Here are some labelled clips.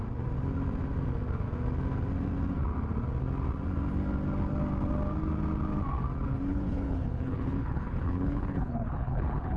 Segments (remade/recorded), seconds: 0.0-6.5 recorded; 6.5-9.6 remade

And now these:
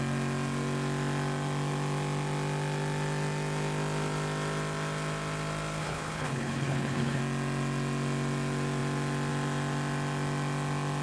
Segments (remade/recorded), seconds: 0.0-5.8 recorded; 5.8-7.2 remade; 7.2-11.0 recorded

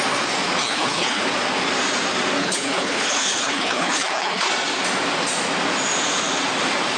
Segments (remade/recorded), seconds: 0.0-0.6 recorded; 0.6-1.2 remade; 1.2-2.4 recorded; 2.4-4.5 remade; 4.5-7.0 recorded

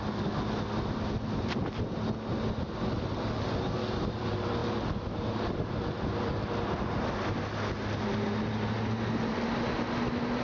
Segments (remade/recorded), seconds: 0.0-10.4 recorded

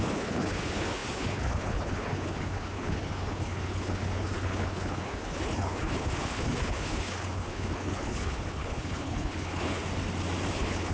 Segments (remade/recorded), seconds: 0.0-9.8 remade; 9.8-10.5 recorded; 10.5-10.9 remade

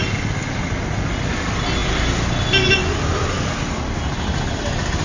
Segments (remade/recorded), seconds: 0.0-5.0 recorded

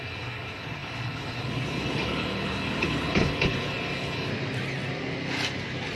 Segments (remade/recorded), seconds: 0.0-4.3 remade; 4.3-6.0 recorded

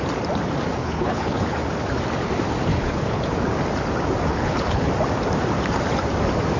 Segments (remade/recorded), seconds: 0.0-0.8 recorded; 0.8-1.6 remade; 1.6-2.7 recorded; 2.7-3.2 remade; 3.2-4.3 recorded; 4.3-4.9 remade; 4.9-6.6 recorded